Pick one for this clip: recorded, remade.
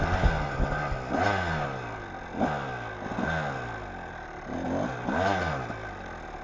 recorded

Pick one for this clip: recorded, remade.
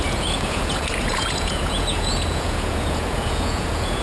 remade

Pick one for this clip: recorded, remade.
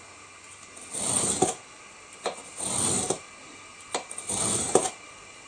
recorded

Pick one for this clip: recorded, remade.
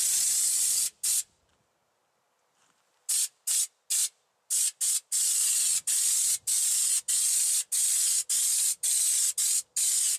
recorded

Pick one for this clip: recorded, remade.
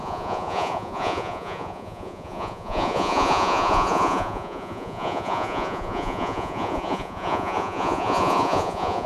remade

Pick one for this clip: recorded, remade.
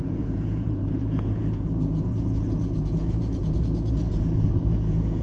remade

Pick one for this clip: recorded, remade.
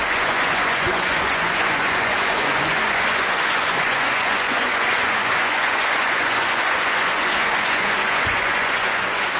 remade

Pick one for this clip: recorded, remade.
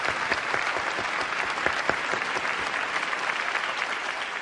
recorded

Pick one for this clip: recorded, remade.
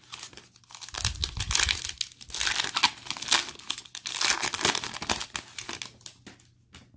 recorded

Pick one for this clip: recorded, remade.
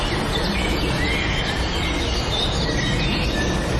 recorded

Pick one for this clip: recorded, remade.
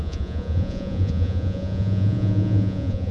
remade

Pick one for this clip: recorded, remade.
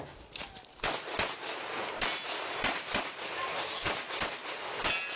recorded